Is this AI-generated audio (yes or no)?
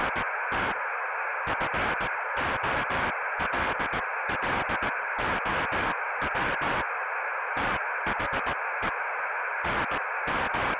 no